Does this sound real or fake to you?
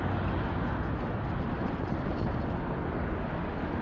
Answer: real